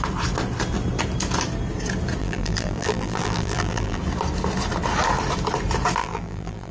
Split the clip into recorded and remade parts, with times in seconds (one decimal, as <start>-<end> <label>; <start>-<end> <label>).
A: 0.0-2.2 recorded; 2.2-4.0 remade; 4.0-6.0 recorded; 6.0-6.7 remade